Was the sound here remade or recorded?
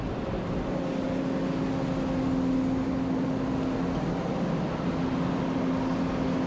recorded